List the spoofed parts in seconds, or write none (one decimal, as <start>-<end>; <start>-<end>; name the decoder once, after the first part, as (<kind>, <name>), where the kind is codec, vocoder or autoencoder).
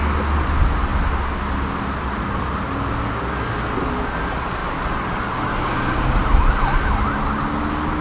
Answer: none